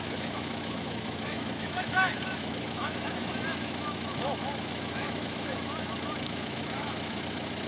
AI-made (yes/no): yes